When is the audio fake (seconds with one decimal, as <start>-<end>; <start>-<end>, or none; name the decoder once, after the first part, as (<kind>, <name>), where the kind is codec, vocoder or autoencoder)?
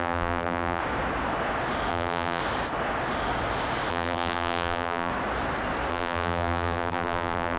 0.0-0.8 (vocoder, BigVGAN v2); 1.9-2.4; 3.9-5.1; 5.9-7.6